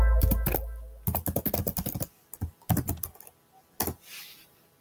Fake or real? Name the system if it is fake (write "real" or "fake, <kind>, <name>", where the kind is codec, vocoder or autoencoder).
real